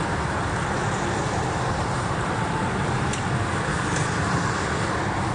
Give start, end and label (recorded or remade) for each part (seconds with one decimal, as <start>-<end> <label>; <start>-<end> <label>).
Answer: 0.0-0.8 recorded; 0.8-3.3 remade; 3.3-5.3 recorded